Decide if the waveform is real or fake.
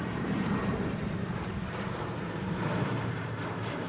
fake